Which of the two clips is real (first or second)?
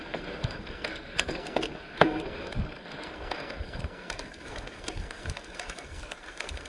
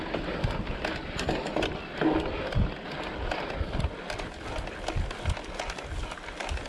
second